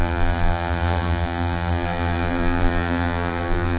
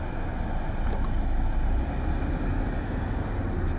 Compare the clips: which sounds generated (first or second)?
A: first